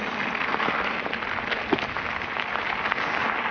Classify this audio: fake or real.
real